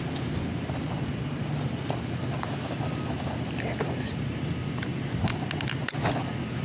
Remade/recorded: recorded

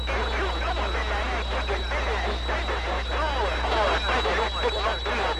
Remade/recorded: recorded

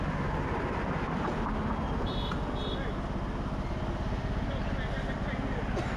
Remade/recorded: recorded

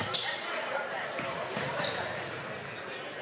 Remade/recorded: recorded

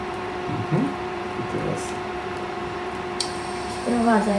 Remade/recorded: remade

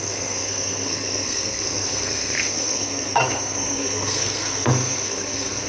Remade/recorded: remade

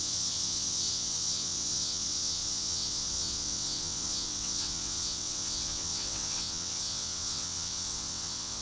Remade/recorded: remade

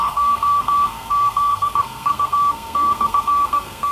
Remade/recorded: remade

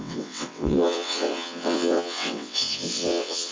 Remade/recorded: remade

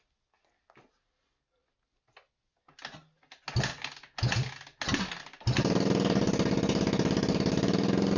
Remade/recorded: recorded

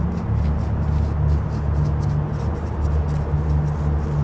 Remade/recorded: recorded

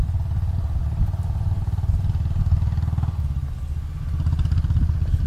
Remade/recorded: recorded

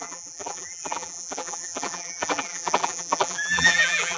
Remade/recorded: remade